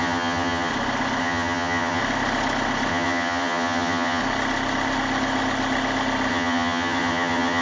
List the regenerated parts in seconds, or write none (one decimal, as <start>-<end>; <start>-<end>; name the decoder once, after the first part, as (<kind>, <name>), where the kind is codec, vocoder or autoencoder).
0.0-0.7 (vocoder, HiFi-GAN); 1.2-2.0; 2.9-4.2; 6.3-7.6